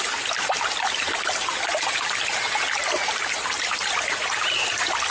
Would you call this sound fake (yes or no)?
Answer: no